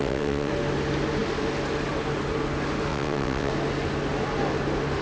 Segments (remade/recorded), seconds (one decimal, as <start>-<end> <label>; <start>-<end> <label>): 0.0-0.5 remade; 0.5-2.9 recorded; 2.9-3.5 remade; 3.5-5.0 recorded